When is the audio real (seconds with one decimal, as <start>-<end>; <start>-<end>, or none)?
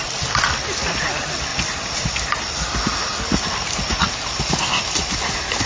0.0-5.7